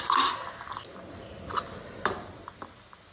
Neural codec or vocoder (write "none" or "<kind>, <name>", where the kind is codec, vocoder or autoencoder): none